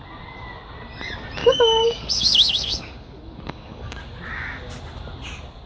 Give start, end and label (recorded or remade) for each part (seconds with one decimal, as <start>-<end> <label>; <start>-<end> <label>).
0.0-1.4 recorded; 1.4-4.0 remade; 4.0-5.7 recorded